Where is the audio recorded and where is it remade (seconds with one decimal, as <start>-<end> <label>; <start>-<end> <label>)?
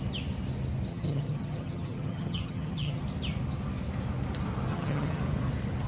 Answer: 0.0-0.9 recorded; 0.9-3.0 remade; 3.0-4.7 recorded; 4.7-5.2 remade; 5.2-5.9 recorded